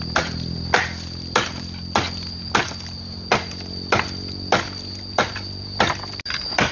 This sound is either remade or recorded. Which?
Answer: recorded